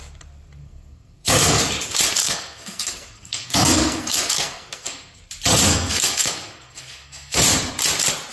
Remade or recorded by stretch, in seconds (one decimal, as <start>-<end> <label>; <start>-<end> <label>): 0.0-0.6 recorded; 0.6-1.6 remade; 1.6-2.2 recorded; 2.2-5.2 remade; 5.2-5.7 recorded; 5.7-7.4 remade; 7.4-8.3 recorded